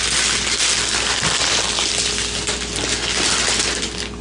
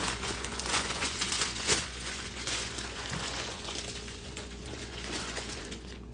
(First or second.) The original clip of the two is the first